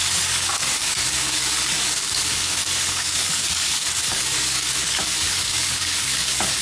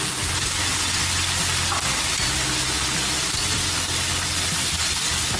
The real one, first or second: second